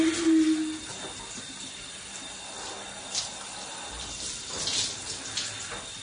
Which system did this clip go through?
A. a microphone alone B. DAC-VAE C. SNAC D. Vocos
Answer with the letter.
A